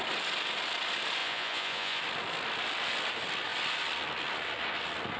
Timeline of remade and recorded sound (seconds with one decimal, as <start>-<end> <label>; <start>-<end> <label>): 0.0-1.2 recorded; 1.2-2.0 remade; 2.0-5.2 recorded